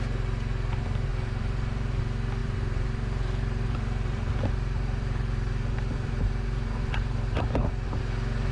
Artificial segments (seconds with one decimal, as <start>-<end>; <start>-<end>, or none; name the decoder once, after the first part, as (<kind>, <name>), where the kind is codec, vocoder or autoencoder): 1.1-2.0 (vocoder, BigVGAN v2); 2.4-7.4